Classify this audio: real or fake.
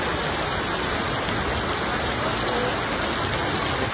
real